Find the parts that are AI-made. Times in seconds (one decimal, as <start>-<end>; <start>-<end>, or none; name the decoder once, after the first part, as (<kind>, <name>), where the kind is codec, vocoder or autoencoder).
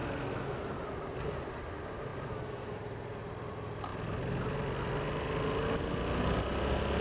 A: none